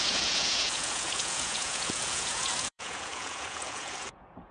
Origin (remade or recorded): remade